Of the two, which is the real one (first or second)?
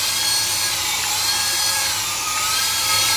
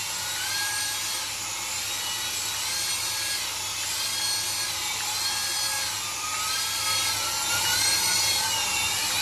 second